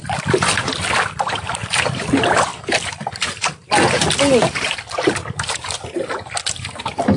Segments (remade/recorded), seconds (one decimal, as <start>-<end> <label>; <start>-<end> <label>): 0.0-7.2 recorded

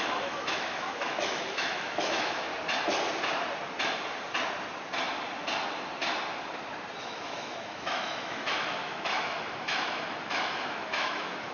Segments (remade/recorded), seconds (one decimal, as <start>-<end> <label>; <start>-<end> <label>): 0.0-2.5 remade; 2.5-7.0 recorded; 7.0-11.5 remade